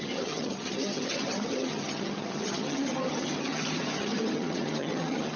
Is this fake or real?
fake